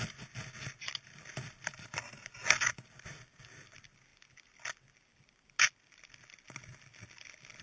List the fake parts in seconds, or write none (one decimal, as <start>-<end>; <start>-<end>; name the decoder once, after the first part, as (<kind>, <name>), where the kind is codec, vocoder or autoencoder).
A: none